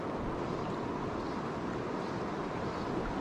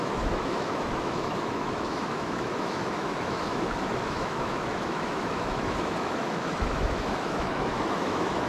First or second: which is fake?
second